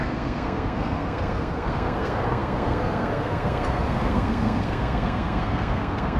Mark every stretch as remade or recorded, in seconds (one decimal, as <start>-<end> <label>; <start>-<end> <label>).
0.0-6.2 remade